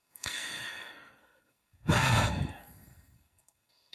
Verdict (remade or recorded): remade